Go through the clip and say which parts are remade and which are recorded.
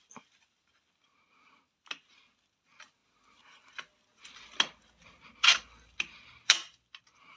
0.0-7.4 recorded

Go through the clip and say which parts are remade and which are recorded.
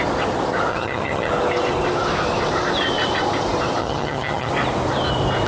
0.0-0.7 recorded; 0.7-1.3 remade; 1.3-3.8 recorded; 3.8-4.5 remade; 4.5-5.5 recorded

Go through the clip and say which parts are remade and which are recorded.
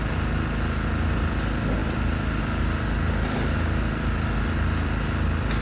0.0-5.6 recorded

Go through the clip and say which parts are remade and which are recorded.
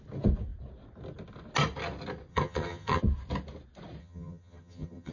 0.0-2.3 recorded; 2.3-3.0 remade; 3.0-4.0 recorded; 4.0-5.1 remade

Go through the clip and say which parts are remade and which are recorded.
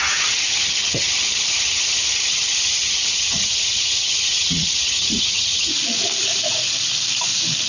0.0-5.7 remade; 5.7-7.7 recorded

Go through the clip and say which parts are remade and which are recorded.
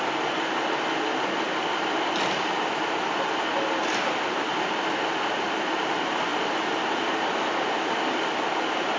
0.0-9.0 recorded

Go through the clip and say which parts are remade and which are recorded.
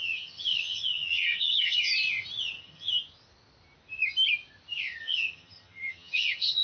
0.0-1.9 remade; 1.9-2.6 recorded; 2.6-3.0 remade; 3.0-5.0 recorded; 5.0-6.6 remade